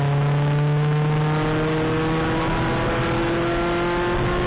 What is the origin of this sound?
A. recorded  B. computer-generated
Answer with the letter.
A